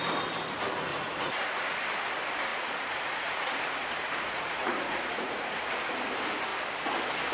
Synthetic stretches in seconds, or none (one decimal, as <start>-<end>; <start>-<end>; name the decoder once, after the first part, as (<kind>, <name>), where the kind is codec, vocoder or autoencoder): 0.9-1.7 (vocoder, Vocos); 2.5-5.6